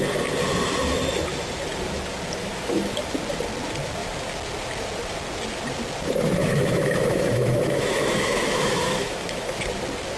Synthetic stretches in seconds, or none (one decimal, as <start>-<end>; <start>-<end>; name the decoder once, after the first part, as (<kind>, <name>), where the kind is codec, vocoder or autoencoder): 2.4-3.1 (autoencoder, DAC-VAE); 6.4-9.6